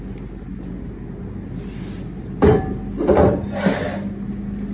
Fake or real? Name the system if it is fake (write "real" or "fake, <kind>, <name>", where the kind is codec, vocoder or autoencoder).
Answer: real